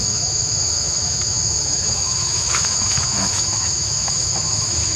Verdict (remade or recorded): remade